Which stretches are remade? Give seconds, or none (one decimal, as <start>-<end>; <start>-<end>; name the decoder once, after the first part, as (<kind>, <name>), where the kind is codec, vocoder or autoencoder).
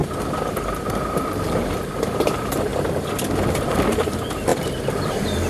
0.8-2.7 (vocoder, BigVGAN v2); 3.5-5.5